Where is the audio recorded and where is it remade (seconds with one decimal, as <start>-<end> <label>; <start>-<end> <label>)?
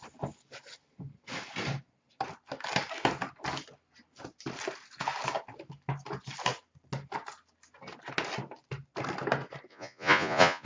0.0-9.7 recorded; 9.7-10.7 remade